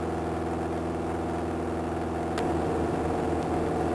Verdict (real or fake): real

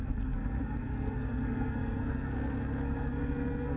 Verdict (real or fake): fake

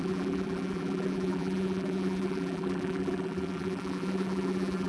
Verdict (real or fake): fake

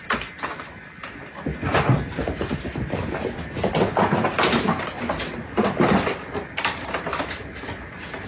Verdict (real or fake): real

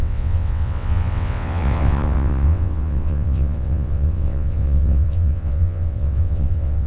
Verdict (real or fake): fake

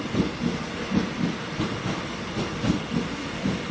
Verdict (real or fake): real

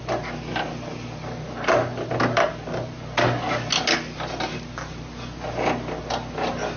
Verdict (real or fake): real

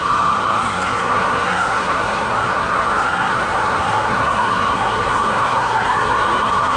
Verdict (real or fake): fake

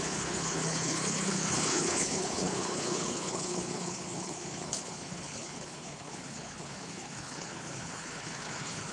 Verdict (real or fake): fake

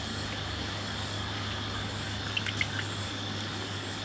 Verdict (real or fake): fake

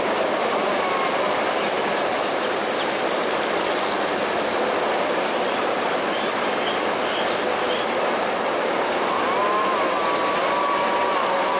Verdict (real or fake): real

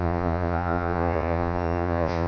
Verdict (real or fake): fake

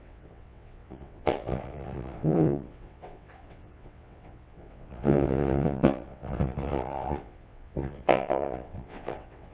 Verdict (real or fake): fake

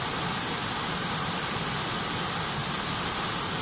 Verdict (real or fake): real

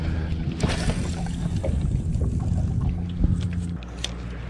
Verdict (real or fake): real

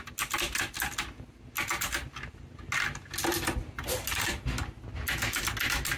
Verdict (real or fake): real